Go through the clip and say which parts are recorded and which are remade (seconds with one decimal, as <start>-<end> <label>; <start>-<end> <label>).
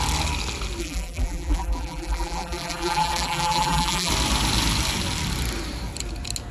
0.0-0.8 recorded; 0.8-4.1 remade; 4.1-6.5 recorded